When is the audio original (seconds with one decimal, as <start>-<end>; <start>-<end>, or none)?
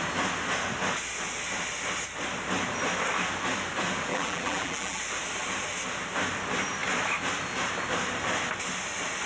0.0-4.1; 5.0-9.3